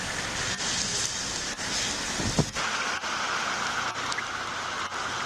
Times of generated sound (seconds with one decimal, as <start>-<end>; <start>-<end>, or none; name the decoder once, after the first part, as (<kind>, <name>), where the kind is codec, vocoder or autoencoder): none